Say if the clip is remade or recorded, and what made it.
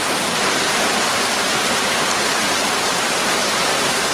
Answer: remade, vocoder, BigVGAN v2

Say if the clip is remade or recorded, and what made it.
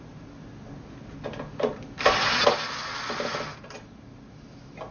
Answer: recorded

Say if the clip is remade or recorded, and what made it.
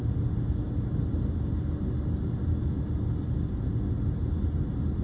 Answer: recorded